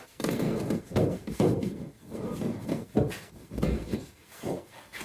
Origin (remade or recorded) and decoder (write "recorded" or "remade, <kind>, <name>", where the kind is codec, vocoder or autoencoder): remade, codec, SNAC